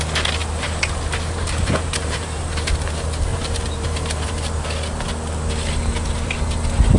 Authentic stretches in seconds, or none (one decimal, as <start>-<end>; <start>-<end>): 0.0-0.4; 2.5-3.3; 4.5-7.0